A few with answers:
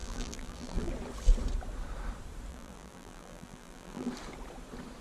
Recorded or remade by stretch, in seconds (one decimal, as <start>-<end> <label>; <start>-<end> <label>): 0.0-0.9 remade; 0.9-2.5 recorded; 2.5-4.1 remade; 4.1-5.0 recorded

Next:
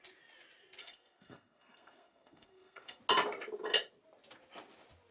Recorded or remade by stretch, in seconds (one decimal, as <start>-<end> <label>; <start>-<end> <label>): 0.0-0.8 recorded; 0.8-3.0 remade; 3.0-5.1 recorded

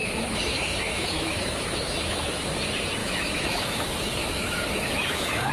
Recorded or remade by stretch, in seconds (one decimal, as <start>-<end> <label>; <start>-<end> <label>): 0.0-2.5 remade; 2.5-3.0 recorded; 3.0-5.5 remade

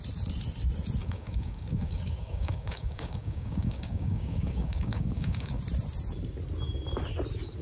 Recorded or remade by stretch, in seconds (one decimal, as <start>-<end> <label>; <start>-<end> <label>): 0.0-1.0 recorded; 1.0-5.6 remade; 5.6-7.6 recorded

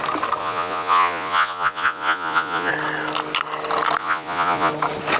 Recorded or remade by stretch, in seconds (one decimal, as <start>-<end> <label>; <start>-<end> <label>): 0.0-0.4 recorded; 0.4-2.7 remade; 2.7-4.0 recorded; 4.0-4.7 remade; 4.7-5.2 recorded